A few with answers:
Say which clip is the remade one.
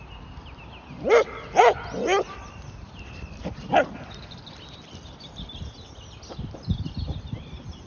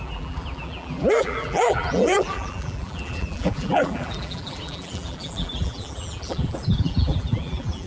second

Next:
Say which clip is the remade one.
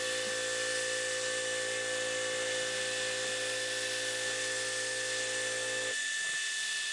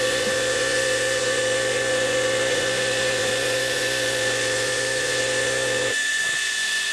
second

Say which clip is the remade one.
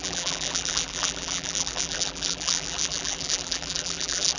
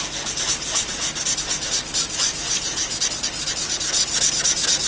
first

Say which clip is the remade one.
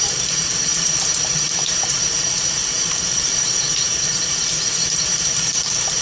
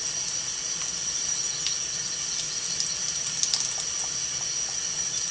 first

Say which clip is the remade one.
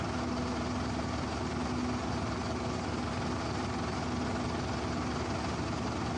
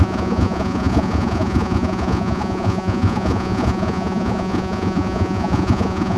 second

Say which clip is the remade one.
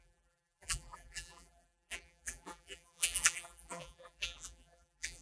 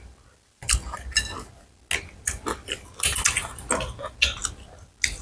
first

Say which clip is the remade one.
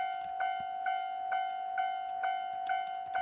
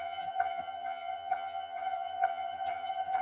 second